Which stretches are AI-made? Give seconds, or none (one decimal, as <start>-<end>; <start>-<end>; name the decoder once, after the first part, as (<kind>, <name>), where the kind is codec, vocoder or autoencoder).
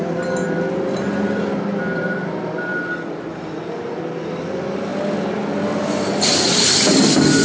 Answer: 0.0-0.4 (vocoder, BigVGAN v2); 1.5-4.9; 5.7-7.4